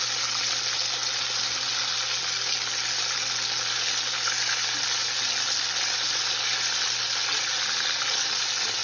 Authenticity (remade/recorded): recorded